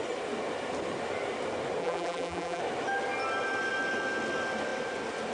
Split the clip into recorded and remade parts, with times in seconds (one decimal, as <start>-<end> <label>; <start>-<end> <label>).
0.0-1.8 recorded; 1.8-2.6 remade; 2.6-5.3 recorded